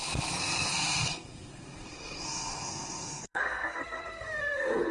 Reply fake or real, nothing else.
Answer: fake